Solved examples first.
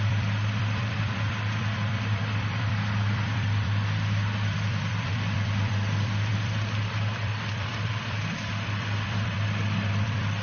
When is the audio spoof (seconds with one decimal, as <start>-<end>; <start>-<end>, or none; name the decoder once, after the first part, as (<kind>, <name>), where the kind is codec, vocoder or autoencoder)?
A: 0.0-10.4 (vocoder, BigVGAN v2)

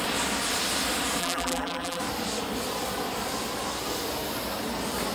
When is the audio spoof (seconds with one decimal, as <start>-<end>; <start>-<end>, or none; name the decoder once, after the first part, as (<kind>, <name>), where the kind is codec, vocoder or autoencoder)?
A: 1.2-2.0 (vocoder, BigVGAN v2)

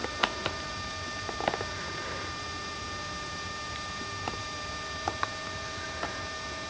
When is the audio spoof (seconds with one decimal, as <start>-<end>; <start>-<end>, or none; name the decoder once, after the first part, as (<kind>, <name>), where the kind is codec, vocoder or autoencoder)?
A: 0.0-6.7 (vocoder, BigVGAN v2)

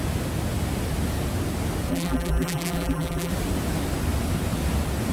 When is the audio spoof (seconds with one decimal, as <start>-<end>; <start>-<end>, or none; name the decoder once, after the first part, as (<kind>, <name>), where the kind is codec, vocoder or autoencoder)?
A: 1.9-3.3 (vocoder, BigVGAN v2)

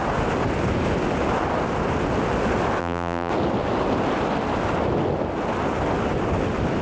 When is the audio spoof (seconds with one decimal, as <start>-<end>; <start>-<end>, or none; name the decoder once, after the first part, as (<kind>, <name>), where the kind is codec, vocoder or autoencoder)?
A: 2.8-3.3 (vocoder, BigVGAN v2)

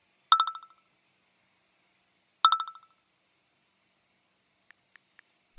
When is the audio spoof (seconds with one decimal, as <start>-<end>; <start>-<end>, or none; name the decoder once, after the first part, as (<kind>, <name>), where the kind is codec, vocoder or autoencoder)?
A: none